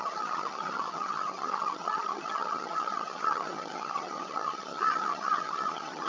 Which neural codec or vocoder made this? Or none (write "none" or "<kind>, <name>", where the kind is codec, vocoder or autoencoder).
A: vocoder, HiFi-GAN